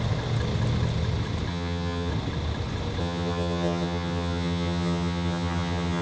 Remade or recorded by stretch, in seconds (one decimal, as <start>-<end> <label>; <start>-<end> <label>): 0.0-1.5 recorded; 1.5-2.1 remade; 2.1-3.0 recorded; 3.0-6.0 remade